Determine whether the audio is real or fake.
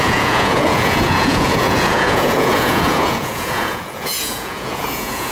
fake